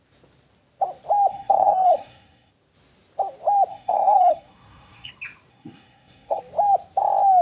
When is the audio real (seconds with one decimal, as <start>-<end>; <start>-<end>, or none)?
0.0-1.3; 2.5-3.7; 5.1-5.5; 6.4-7.4